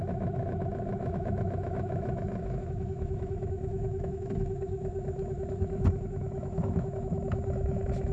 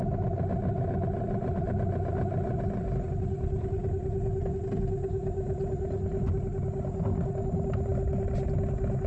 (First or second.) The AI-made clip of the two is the first